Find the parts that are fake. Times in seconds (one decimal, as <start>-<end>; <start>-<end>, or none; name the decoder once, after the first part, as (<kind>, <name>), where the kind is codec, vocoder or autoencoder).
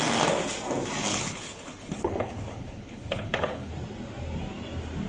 1.1-3.7 (codec, HILCodec)